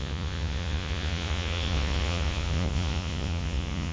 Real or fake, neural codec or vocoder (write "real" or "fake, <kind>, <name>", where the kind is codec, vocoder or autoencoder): fake, vocoder, Vocos